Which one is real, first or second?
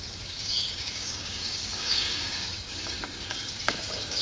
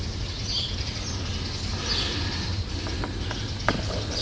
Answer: second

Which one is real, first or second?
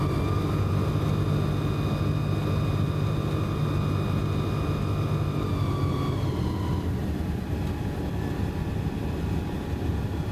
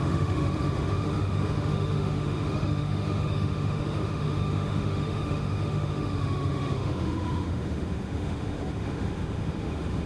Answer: first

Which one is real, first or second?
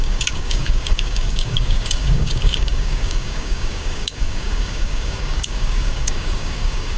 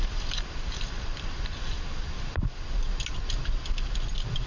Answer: second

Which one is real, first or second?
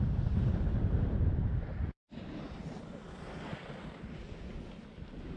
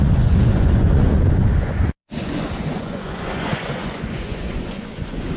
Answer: first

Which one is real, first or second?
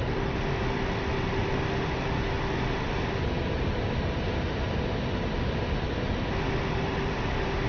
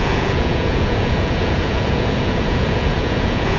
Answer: first